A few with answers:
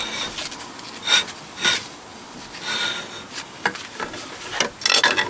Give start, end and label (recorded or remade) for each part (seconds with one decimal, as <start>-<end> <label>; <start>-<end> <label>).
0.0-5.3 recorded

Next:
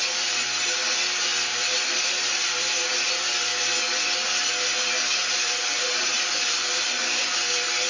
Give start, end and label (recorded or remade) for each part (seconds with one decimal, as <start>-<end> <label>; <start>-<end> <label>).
0.0-1.5 recorded; 1.5-3.1 remade; 3.1-5.2 recorded; 5.2-7.3 remade; 7.3-7.9 recorded

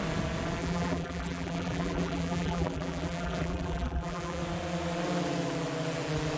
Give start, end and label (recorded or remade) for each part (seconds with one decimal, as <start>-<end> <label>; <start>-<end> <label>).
0.0-0.6 recorded; 0.6-4.4 remade; 4.4-6.4 recorded

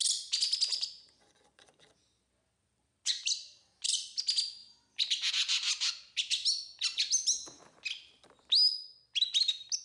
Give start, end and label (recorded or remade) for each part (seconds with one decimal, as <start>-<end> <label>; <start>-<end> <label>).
0.0-0.7 recorded; 0.7-1.8 remade; 1.8-9.8 recorded